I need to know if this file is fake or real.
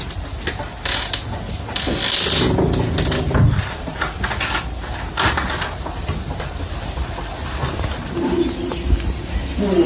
real